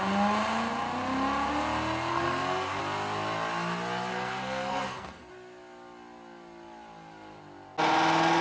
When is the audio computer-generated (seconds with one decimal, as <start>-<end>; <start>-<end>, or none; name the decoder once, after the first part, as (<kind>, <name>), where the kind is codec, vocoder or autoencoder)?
2.1-2.8 (codec, SNAC); 4.1-5.3